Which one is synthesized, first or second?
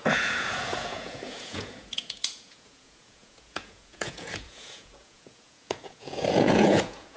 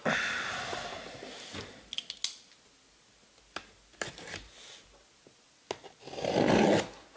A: first